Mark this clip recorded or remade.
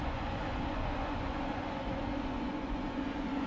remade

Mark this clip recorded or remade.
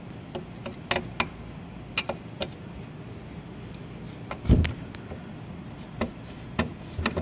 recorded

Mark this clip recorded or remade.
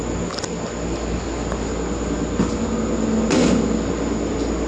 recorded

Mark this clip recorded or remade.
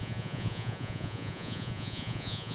remade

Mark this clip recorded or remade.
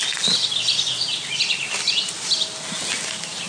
recorded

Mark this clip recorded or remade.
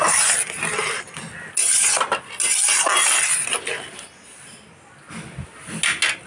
recorded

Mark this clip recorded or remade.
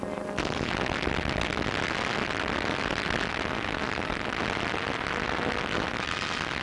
recorded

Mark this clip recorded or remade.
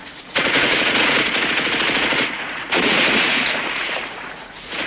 remade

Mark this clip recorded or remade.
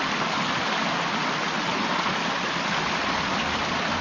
recorded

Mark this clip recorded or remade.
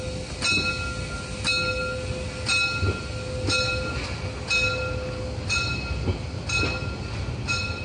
recorded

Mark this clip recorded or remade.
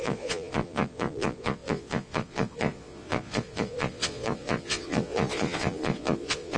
remade